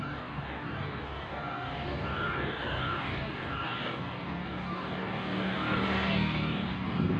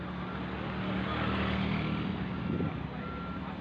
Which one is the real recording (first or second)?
second